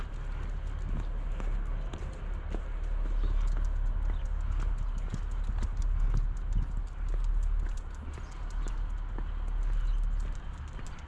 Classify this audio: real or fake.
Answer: real